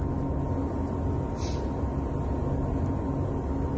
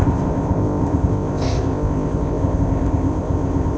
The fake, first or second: second